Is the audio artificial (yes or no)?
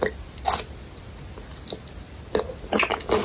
no